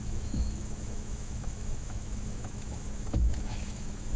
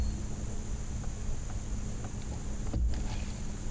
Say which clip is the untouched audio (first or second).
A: second